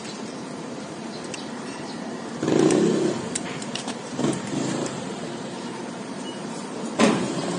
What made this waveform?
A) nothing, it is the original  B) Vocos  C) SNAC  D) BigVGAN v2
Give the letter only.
D